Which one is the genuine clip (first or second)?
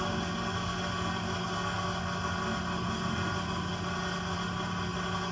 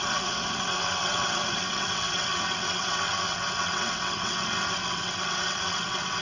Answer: first